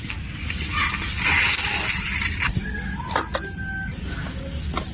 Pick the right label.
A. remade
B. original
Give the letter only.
B